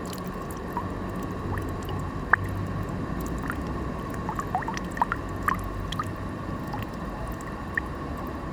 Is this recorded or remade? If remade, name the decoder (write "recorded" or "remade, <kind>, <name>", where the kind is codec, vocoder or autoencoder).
recorded